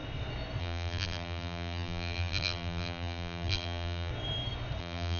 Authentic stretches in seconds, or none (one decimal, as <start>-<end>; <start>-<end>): 0.0-0.6; 4.1-4.8